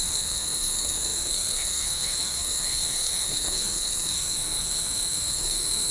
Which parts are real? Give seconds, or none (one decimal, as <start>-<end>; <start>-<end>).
none